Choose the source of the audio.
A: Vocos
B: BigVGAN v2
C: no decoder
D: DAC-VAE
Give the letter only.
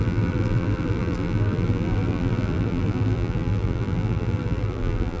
B